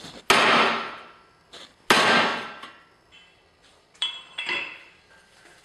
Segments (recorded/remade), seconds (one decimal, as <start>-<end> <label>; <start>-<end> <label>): 0.0-2.3 recorded; 2.3-2.9 remade; 2.9-3.3 recorded; 3.3-5.6 remade